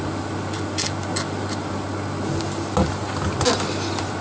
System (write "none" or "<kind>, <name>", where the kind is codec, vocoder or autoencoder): none